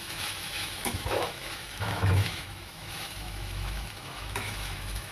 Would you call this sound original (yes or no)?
no